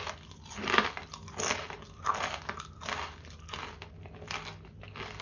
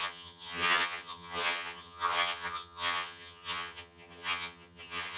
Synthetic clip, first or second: second